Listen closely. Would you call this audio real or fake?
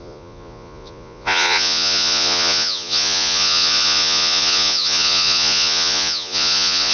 fake